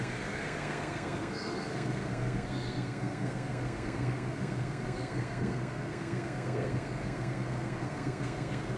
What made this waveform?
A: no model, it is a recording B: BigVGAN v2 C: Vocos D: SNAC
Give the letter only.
D